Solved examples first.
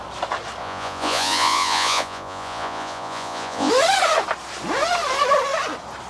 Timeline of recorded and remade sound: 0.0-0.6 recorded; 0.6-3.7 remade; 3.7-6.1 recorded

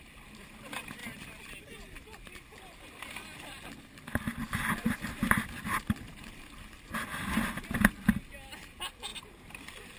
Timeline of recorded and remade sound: 0.0-1.0 recorded; 1.0-1.5 remade; 1.5-9.1 recorded; 9.1-10.0 remade

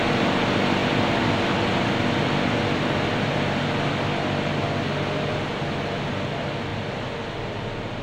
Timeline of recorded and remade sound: 0.0-8.0 recorded

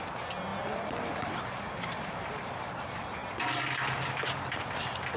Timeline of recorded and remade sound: 0.0-5.2 recorded

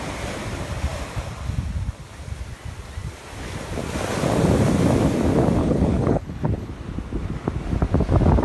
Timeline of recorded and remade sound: 0.0-5.6 recorded; 5.6-6.7 remade; 6.7-8.4 recorded

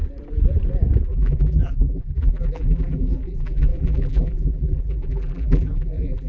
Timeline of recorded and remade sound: 0.0-1.1 recorded; 1.1-6.3 remade